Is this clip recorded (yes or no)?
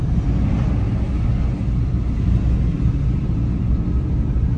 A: yes